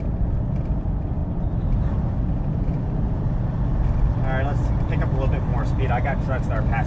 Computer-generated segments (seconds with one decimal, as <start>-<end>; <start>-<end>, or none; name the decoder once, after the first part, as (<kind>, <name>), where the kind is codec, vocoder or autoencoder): none